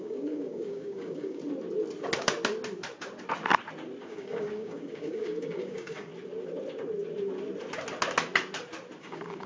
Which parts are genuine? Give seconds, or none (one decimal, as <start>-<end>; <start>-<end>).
1.4-4.0; 6.1-9.0